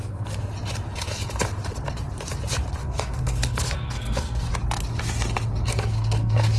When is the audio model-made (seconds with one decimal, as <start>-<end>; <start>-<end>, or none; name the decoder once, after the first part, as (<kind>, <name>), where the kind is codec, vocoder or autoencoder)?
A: 0.0-0.5 (codec, SNAC); 2.8-4.5; 5.7-6.6